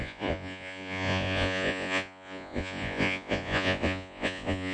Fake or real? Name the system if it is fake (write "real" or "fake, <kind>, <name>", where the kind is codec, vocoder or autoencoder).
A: fake, vocoder, Vocos